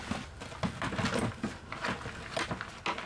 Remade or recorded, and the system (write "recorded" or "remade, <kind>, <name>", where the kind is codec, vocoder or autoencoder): recorded